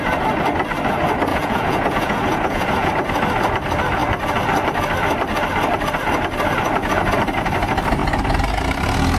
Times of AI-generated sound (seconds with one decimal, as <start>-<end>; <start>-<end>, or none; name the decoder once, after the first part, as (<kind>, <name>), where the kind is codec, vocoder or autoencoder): 1.3-2.9 (vocoder, Vocos)